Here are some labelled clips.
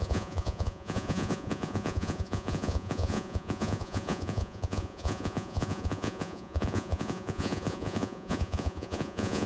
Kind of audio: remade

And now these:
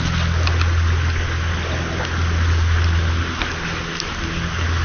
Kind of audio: recorded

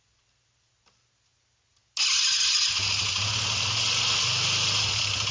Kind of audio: recorded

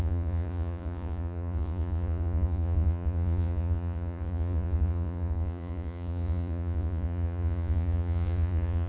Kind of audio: remade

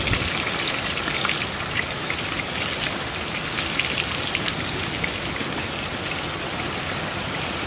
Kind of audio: recorded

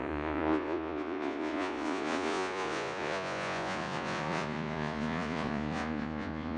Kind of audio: remade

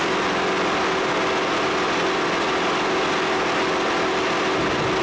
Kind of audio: recorded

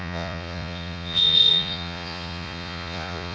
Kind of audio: remade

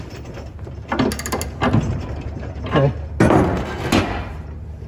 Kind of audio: recorded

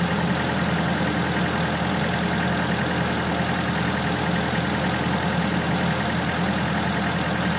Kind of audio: recorded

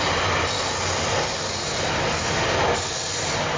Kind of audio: recorded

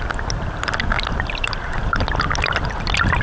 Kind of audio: recorded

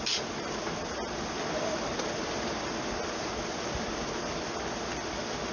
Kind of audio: recorded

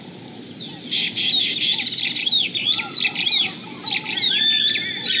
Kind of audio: recorded